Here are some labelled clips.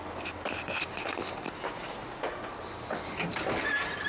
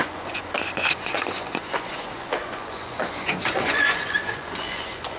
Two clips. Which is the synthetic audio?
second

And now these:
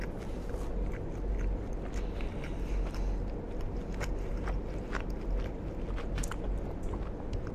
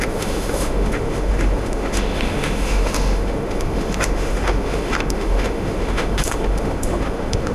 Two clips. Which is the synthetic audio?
second